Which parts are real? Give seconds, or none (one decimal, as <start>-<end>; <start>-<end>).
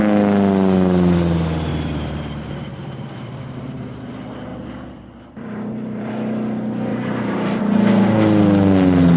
0.0-1.7; 4.1-4.5; 6.1-6.9; 7.6-9.2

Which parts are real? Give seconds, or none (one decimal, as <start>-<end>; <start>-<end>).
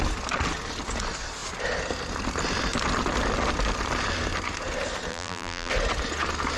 0.0-5.1; 5.7-6.6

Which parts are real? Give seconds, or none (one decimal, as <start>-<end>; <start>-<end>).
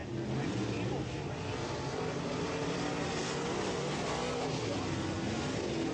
0.0-5.9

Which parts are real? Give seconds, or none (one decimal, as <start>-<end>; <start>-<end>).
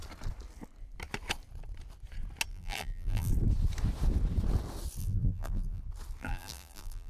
0.0-2.5; 3.3-5.0; 5.8-6.2